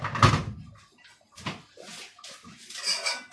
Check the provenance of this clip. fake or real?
real